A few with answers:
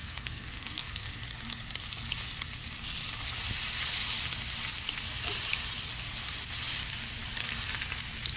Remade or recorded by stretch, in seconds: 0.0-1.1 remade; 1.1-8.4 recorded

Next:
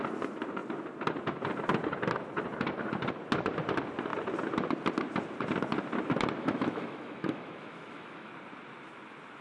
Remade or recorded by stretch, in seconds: 0.0-6.4 recorded; 6.4-8.3 remade; 8.3-9.4 recorded

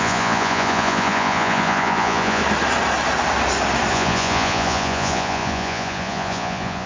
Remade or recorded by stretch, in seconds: 0.0-2.4 remade; 2.4-3.9 recorded; 3.9-6.9 remade

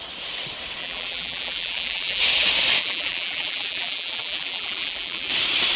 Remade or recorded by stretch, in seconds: 0.0-0.8 recorded; 0.8-2.2 remade; 2.2-2.8 recorded; 2.8-5.3 remade; 5.3-5.8 recorded

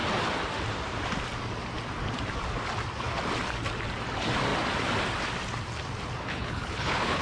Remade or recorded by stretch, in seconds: 0.0-6.3 recorded; 6.3-7.2 remade

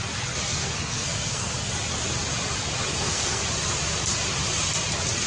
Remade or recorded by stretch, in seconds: 0.0-0.5 recorded; 0.5-1.5 remade; 1.5-2.9 recorded; 2.9-3.4 remade; 3.4-5.3 recorded

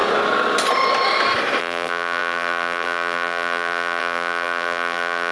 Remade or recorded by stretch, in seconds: 0.0-1.6 recorded; 1.6-5.3 remade

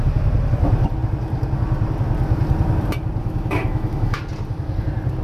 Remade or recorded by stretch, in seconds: 0.0-3.2 recorded; 3.2-4.2 remade; 4.2-5.2 recorded